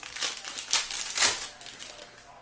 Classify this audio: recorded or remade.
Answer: recorded